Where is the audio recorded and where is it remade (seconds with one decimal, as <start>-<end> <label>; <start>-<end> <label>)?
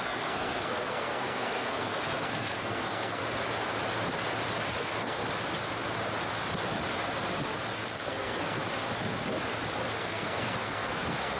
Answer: 0.0-3.2 remade; 3.2-4.8 recorded; 4.8-5.2 remade; 5.2-8.0 recorded; 8.0-8.6 remade; 8.6-10.0 recorded; 10.0-11.4 remade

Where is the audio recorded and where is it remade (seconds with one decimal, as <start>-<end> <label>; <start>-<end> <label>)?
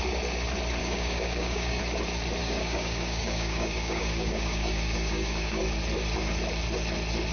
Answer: 0.0-0.8 recorded; 0.8-1.8 remade; 1.8-2.4 recorded; 2.4-5.6 remade; 5.6-7.3 recorded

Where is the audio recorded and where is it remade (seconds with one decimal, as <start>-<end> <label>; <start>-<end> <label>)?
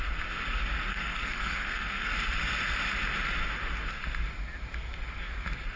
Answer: 0.0-0.9 recorded; 0.9-2.1 remade; 2.1-5.8 recorded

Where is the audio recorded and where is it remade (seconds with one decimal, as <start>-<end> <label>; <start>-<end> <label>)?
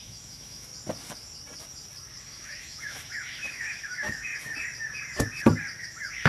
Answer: 0.0-0.7 remade; 0.7-2.2 recorded; 2.2-4.3 remade; 4.3-5.8 recorded; 5.8-6.3 remade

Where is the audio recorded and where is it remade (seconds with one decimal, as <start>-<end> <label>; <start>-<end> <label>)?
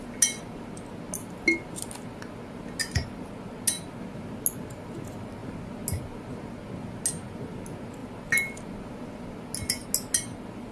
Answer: 0.0-10.7 recorded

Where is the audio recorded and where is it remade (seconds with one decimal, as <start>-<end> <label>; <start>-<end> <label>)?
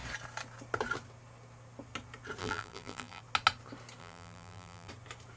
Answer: 0.0-2.4 recorded; 2.4-3.2 remade; 3.2-4.0 recorded; 4.0-4.9 remade; 4.9-5.4 recorded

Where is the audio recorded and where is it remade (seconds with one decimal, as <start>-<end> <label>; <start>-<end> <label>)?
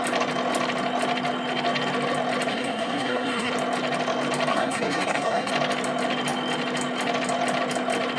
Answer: 0.0-2.5 recorded; 2.5-3.5 remade; 3.5-4.5 recorded; 4.5-5.5 remade; 5.5-8.2 recorded